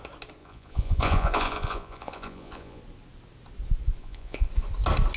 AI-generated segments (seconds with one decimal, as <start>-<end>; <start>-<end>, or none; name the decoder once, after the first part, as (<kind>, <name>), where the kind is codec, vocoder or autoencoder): 0.4-2.8 (vocoder, Vocos); 4.0-4.5